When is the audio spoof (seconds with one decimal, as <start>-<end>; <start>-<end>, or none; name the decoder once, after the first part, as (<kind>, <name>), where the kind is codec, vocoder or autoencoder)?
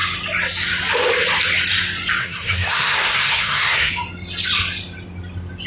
2.2-3.9 (codec, SNAC)